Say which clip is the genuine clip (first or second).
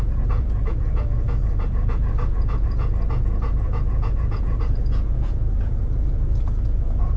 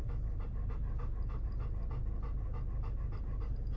second